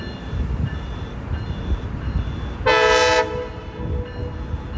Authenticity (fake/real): real